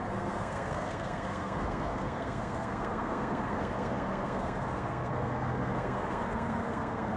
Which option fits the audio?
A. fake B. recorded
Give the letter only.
A